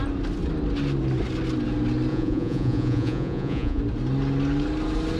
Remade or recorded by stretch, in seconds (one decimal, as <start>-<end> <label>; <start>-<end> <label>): 0.0-2.1 recorded; 2.1-3.8 remade; 3.8-5.2 recorded

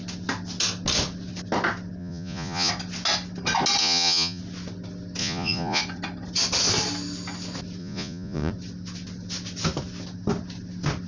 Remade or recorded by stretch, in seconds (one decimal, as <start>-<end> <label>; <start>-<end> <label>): 0.0-2.0 recorded; 2.0-2.7 remade; 2.7-3.8 recorded; 3.8-4.4 remade; 4.4-5.2 recorded; 5.2-5.8 remade; 5.8-7.8 recorded; 7.8-8.5 remade; 8.5-11.1 recorded